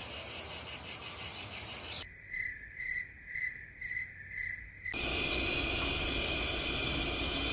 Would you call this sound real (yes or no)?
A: yes